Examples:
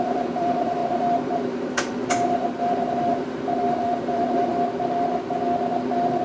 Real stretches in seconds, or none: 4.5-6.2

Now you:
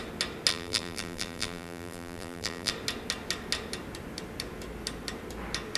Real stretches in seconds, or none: 0.0-0.5; 2.7-5.8

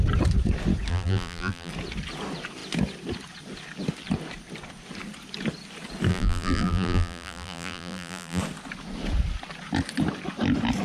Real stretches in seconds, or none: 0.0-0.9; 1.7-6.1; 8.4-10.8

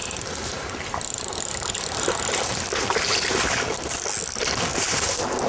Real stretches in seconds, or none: 0.0-5.5

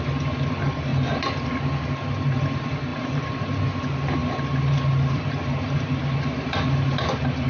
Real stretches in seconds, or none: 0.9-2.1

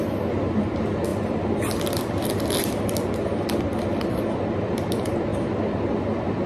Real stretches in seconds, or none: 0.0-1.1; 2.6-3.7; 4.4-5.3; 5.8-6.5

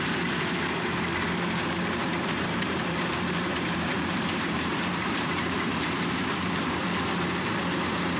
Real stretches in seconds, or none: 0.0-2.0; 6.8-8.2